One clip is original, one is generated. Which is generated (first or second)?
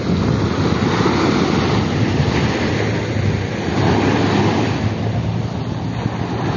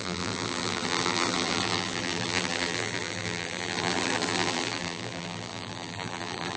second